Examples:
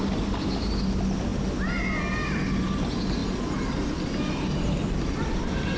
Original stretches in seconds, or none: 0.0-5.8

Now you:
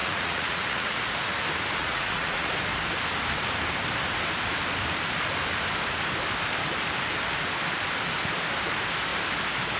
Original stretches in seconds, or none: 1.0-1.8; 2.5-9.8

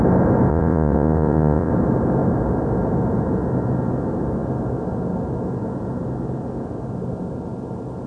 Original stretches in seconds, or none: 0.0-0.5; 1.7-8.1